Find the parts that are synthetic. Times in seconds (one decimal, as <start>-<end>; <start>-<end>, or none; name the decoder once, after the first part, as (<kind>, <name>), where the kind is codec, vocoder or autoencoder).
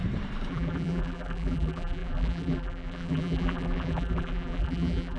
0.5-5.2 (vocoder, BigVGAN v2)